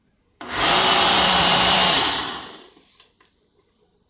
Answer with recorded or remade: remade